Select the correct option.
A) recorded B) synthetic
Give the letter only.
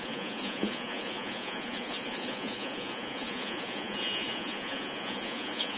B